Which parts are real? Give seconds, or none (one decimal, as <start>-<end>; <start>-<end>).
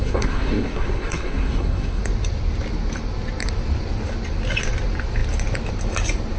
2.0-6.4